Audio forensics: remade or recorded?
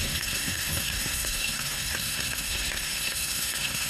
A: remade